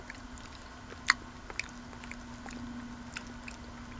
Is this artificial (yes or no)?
no